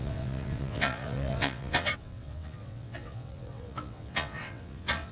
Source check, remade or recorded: remade